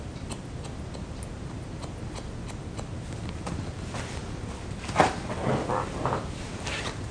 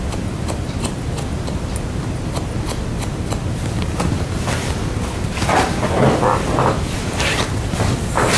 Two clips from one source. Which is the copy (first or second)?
second